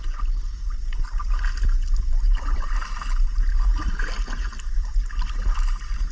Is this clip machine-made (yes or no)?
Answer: no